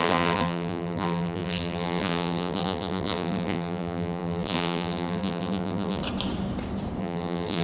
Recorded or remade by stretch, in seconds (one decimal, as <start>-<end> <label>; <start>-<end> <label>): 0.0-6.0 remade; 6.0-7.0 recorded; 7.0-7.6 remade

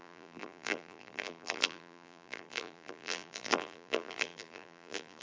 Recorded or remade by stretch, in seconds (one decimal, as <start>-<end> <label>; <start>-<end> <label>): 0.0-5.2 remade

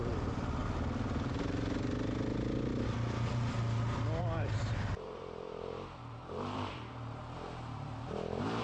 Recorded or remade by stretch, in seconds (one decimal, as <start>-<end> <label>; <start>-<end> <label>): 0.0-0.6 remade; 0.6-4.2 recorded; 4.2-8.6 remade

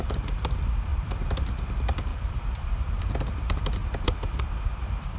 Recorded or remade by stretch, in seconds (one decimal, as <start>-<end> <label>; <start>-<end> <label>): 0.0-0.9 recorded; 0.9-1.7 remade; 1.7-2.1 recorded; 2.1-3.0 remade; 3.0-3.8 recorded; 3.8-5.2 remade